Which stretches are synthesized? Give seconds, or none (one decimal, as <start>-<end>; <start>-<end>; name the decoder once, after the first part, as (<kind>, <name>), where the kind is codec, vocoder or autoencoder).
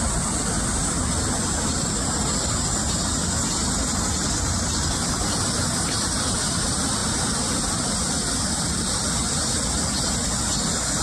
none